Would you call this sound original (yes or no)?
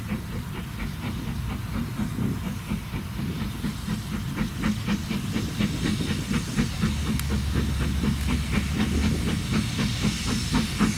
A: yes